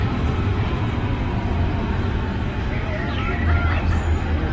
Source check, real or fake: real